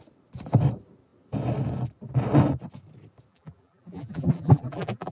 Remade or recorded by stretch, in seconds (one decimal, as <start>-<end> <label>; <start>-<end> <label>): 0.0-3.3 recorded; 3.3-5.1 remade